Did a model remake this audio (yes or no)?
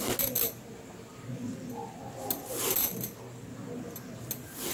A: no